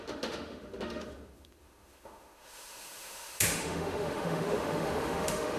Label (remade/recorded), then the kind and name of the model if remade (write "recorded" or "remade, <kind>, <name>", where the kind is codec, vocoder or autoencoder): remade, autoencoder, DAC-VAE